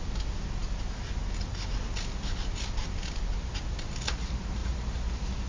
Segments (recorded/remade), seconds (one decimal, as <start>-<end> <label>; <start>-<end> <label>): 0.0-5.5 recorded